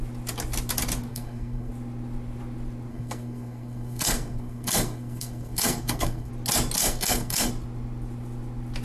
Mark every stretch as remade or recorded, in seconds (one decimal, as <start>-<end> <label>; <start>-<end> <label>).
0.0-1.1 recorded; 1.1-1.7 remade; 1.7-2.9 recorded; 2.9-6.3 remade; 6.3-6.8 recorded; 6.8-7.5 remade; 7.5-8.8 recorded